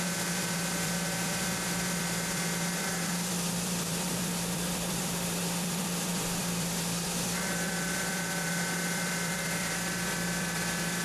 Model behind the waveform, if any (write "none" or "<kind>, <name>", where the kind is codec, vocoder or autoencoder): vocoder, BigVGAN v2